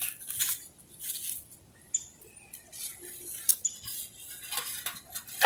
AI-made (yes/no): no